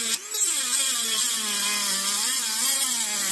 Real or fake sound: real